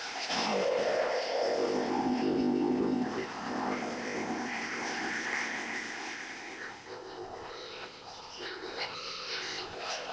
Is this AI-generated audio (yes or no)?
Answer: yes